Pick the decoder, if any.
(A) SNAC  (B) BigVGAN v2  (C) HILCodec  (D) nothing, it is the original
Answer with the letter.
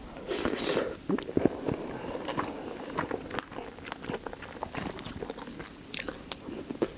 D